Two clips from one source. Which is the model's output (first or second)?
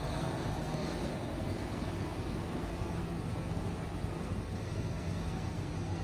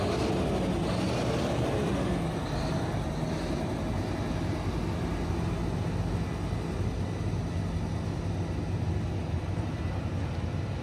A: first